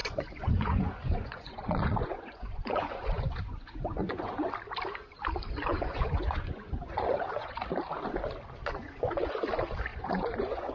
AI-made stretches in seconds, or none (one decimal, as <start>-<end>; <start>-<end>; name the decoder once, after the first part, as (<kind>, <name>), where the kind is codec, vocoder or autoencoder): 0.0-4.4 (vocoder, Vocos); 5.7-7.6; 8.6-9.3; 9.9-10.7